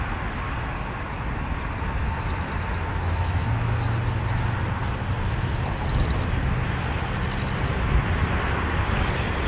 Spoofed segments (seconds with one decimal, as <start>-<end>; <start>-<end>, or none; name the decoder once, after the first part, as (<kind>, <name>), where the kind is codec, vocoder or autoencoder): 2.9-3.5 (autoencoder, DAC-VAE)